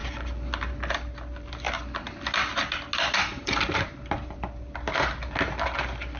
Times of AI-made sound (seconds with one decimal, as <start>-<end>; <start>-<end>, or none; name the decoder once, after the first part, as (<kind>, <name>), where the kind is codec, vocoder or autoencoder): 3.3-4.0 (vocoder, BigVGAN v2)